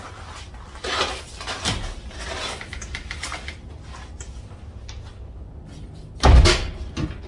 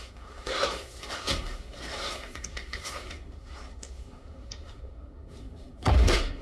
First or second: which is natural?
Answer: first